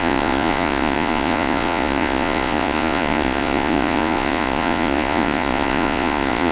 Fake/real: fake